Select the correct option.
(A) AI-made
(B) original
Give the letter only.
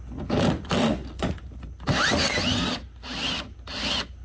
B